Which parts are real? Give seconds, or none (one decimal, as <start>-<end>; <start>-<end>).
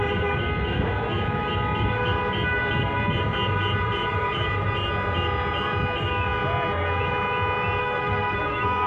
0.0-7.8